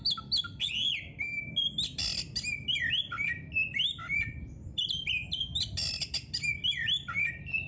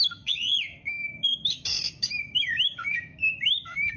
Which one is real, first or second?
first